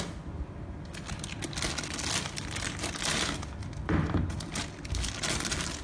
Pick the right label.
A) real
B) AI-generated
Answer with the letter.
A